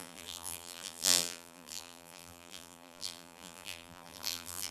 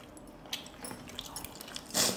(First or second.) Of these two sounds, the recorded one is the second